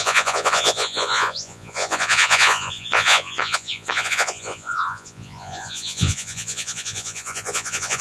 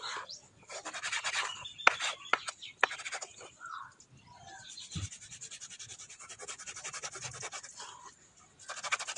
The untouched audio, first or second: second